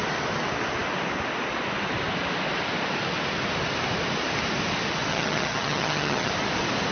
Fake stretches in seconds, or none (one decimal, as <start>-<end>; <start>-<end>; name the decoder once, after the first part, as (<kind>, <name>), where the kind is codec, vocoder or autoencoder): 5.1-6.3 (vocoder, HiFi-GAN)

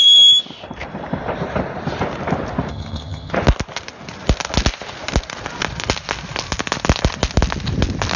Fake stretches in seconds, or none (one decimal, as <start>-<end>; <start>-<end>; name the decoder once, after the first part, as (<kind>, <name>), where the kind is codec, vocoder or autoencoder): 2.7-3.3 (vocoder, HiFi-GAN)

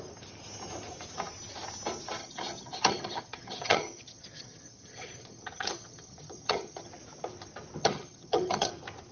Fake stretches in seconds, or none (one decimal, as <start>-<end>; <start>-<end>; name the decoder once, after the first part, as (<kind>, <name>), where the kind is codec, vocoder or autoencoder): 2.2-6.9 (vocoder, HiFi-GAN); 7.8-8.7

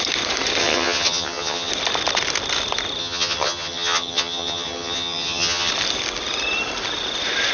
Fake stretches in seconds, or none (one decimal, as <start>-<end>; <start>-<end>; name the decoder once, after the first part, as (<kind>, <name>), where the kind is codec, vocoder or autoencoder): 0.6-1.7 (vocoder, HiFi-GAN); 3.0-5.7